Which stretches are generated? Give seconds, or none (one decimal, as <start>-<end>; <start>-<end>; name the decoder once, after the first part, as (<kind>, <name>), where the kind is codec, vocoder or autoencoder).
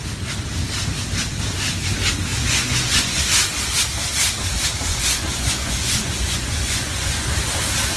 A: 2.3-3.2 (vocoder, Vocos); 4.9-7.3